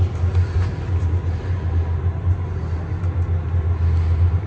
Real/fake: real